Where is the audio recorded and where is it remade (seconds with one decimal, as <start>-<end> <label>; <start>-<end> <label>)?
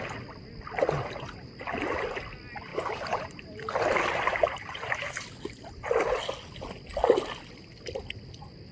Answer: 0.0-2.7 recorded; 2.7-3.8 remade; 3.8-4.3 recorded; 4.3-5.2 remade; 5.2-8.7 recorded